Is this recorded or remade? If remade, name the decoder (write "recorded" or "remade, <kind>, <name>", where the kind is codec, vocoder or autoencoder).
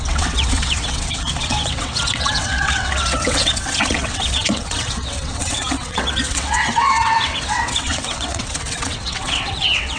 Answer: remade, vocoder, WaveNeXt